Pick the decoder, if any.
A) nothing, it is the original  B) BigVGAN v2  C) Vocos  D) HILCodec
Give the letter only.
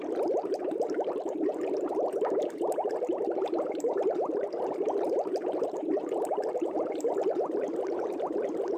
B